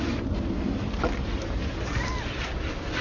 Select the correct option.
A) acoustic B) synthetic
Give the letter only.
A